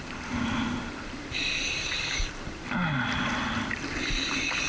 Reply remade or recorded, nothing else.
recorded